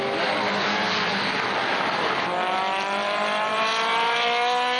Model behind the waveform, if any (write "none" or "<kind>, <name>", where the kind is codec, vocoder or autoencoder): none